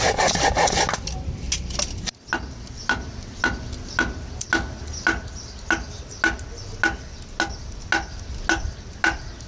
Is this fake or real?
real